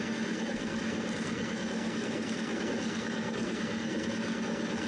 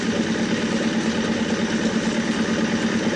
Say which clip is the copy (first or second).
first